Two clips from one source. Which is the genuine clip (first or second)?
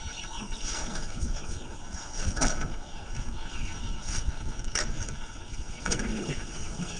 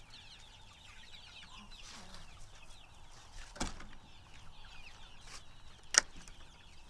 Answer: second